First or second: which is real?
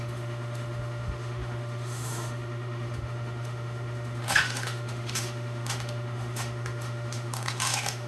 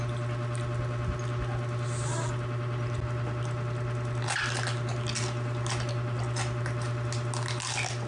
second